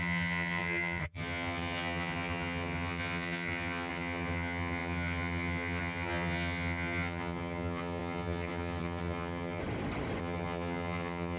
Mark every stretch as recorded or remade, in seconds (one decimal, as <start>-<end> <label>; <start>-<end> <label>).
0.0-9.6 remade; 9.6-10.2 recorded; 10.2-11.4 remade